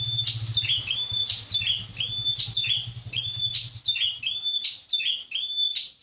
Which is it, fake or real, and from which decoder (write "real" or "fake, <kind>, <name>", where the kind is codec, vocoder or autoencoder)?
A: real